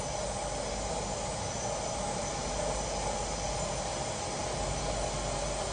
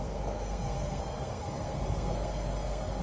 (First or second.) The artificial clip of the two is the second